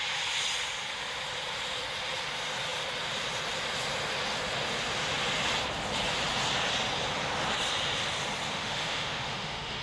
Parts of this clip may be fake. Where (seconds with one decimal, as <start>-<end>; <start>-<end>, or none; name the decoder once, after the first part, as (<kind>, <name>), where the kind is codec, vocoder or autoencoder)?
8.5-9.8 (autoencoder, DAC-VAE)